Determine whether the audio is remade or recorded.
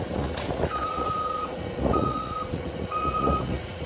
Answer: remade